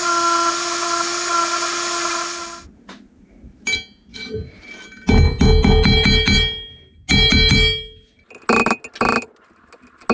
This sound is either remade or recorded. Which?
recorded